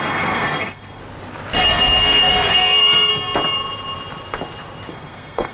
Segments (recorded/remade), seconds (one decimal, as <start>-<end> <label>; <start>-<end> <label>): 0.0-1.0 remade; 1.0-1.6 recorded; 1.6-3.1 remade; 3.1-4.9 recorded; 4.9-5.5 remade